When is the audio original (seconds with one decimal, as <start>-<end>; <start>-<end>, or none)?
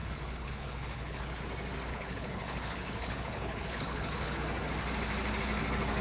1.4-1.9; 4.4-6.0